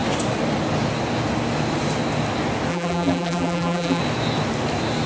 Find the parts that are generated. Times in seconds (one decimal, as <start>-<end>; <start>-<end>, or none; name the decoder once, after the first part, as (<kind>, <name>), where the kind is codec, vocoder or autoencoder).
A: 2.7-4.0 (vocoder, BigVGAN v2)